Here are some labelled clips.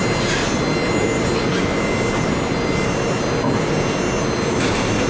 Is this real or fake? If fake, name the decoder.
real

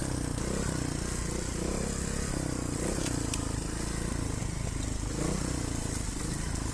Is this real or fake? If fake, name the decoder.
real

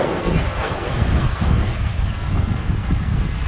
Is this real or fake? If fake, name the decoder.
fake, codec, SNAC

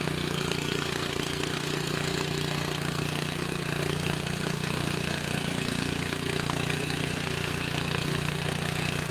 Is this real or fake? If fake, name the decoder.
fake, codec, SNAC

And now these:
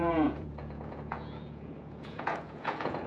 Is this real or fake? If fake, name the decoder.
fake, vocoder, Vocos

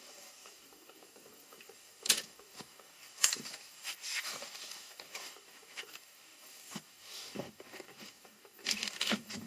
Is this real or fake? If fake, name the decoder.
fake, codec, DAC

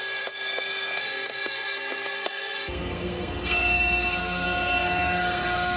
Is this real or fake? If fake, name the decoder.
fake, codec, SNAC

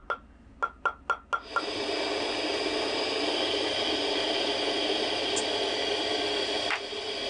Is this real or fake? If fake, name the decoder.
real